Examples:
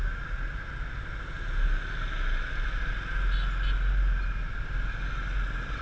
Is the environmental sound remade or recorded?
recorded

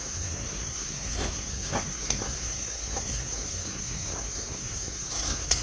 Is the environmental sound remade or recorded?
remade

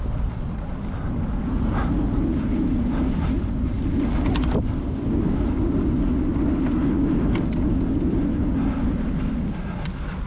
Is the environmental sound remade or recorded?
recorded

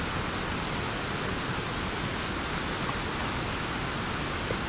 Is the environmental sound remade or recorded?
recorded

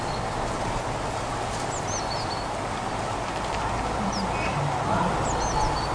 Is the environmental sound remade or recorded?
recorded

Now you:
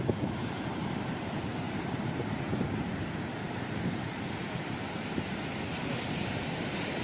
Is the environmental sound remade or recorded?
remade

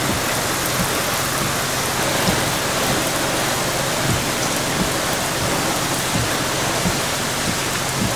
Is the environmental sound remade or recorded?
recorded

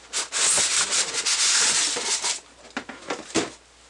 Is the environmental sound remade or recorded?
recorded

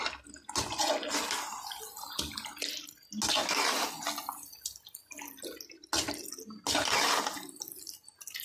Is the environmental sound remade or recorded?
recorded